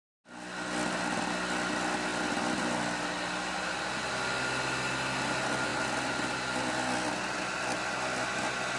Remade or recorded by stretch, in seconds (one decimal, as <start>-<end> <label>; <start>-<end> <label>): 0.0-8.8 recorded